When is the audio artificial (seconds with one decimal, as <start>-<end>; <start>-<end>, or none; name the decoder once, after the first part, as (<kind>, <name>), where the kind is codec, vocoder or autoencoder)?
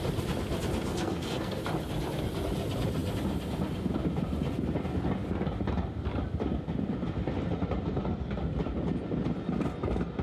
0.9-1.6 (codec, SNAC)